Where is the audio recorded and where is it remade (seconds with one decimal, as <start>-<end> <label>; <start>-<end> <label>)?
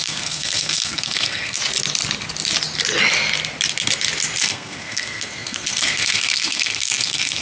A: 0.0-1.6 remade; 1.6-4.4 recorded; 4.4-7.4 remade